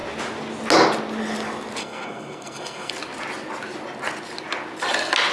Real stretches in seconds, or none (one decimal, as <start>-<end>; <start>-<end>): 0.0-1.8; 2.9-5.3